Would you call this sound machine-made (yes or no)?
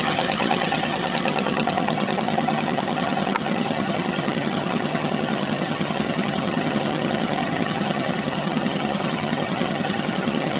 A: yes